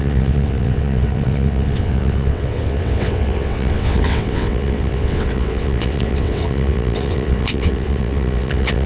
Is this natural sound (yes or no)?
no